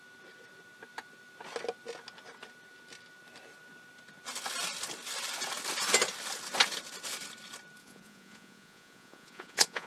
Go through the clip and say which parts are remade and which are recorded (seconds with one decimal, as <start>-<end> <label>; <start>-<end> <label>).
0.0-7.8 recorded; 7.8-9.9 remade